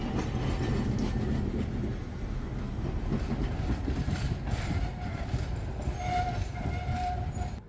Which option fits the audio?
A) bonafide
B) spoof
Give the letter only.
A